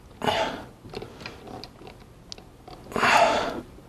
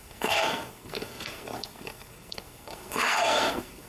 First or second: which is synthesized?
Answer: second